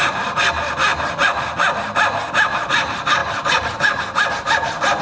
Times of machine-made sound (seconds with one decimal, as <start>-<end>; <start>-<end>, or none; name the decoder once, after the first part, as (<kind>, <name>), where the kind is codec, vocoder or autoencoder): 0.0-0.9 (vocoder, BigVGAN v2); 2.6-3.2; 4.3-5.0